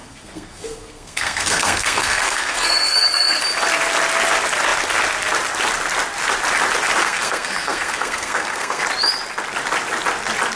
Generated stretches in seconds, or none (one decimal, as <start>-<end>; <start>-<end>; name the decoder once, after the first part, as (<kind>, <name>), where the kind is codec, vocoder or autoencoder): 0.0-3.4 (codec, SNAC); 7.0-8.8